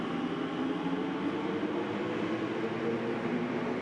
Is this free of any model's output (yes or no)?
yes